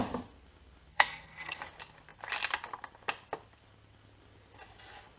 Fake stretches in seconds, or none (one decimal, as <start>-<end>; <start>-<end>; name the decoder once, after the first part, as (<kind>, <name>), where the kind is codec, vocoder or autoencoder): 0.9-1.6 (codec, SNAC)